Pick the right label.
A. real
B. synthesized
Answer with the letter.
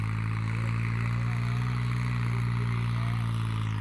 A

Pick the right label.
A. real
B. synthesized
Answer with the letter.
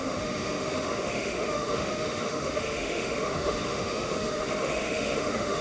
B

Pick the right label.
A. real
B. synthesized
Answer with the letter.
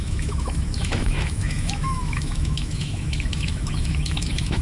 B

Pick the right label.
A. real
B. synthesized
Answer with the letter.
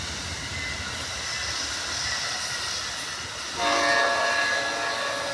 A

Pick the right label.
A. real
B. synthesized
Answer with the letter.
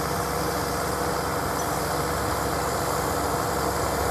A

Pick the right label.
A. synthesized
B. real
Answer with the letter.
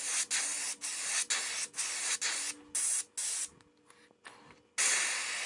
B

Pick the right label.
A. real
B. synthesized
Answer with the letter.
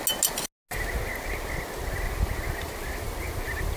A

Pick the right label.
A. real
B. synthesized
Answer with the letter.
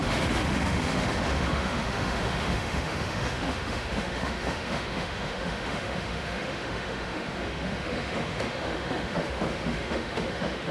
B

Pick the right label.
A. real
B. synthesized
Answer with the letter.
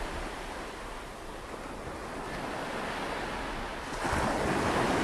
A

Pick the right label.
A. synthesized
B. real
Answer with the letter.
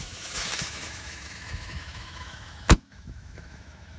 A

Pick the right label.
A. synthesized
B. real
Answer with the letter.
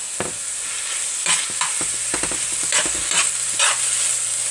B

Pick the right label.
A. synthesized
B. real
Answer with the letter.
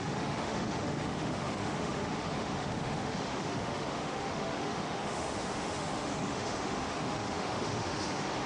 A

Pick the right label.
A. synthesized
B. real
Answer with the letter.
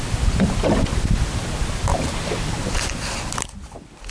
B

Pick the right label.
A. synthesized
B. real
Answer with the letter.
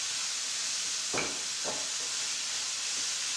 B